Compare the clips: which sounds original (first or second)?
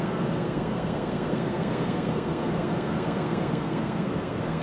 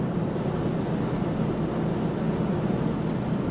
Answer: second